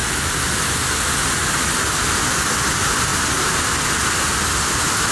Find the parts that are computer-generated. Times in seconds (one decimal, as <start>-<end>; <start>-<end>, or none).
none